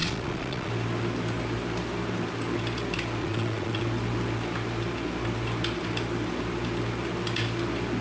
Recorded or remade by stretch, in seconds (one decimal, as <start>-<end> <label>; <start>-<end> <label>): 0.0-0.7 remade; 0.7-3.2 recorded; 3.2-3.8 remade; 3.8-8.0 recorded